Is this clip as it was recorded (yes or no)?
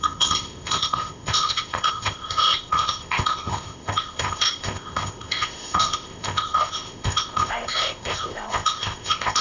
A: no